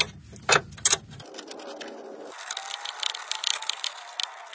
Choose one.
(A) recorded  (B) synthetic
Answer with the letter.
A